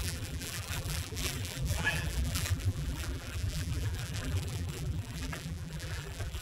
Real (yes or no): no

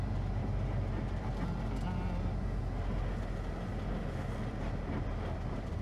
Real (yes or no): yes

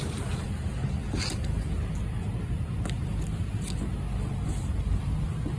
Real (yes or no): yes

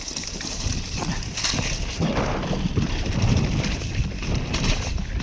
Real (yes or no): no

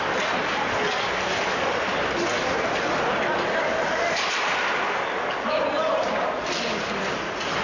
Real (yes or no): no